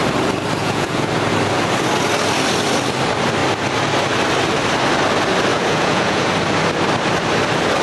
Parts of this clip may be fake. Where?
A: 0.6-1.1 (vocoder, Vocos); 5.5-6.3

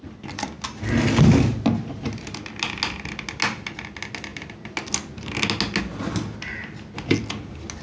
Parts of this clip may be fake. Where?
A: none

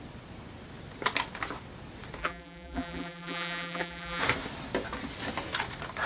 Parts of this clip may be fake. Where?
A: 2.2-4.2 (vocoder, BigVGAN v2)

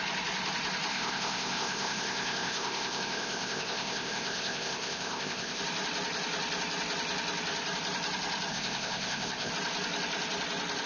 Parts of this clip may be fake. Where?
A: 0.9-5.6 (codec, ZipCodec); 8.5-9.5

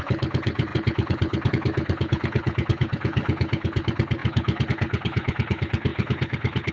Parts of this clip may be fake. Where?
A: 0.0-6.7 (codec, HILCodec)

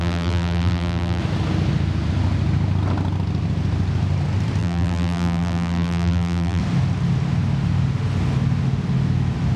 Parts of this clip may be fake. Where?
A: 0.0-1.2 (vocoder, BigVGAN v2); 4.6-6.6

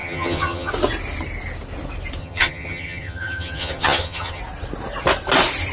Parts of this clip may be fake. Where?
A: 0.0-0.7 (vocoder, HiFi-GAN); 2.2-4.4

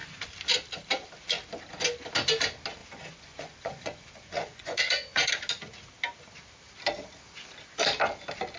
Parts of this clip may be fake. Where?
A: 2.8-5.3 (vocoder, Vocos)